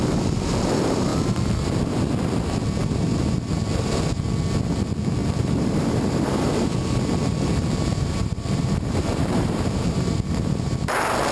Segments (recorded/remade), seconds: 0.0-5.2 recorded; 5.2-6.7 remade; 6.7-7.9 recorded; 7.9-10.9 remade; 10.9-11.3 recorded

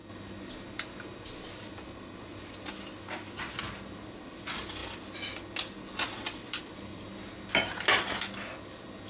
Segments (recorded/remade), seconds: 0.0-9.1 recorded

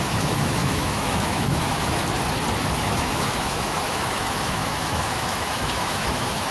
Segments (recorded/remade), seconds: 0.0-2.0 remade; 2.0-2.8 recorded; 2.8-6.5 remade